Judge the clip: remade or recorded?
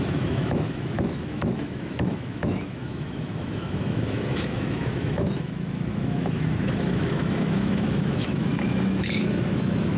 remade